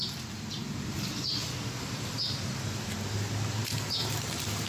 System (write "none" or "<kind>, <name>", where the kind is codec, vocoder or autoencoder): none